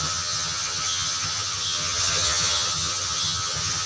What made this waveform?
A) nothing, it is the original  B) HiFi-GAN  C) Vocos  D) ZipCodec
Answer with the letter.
B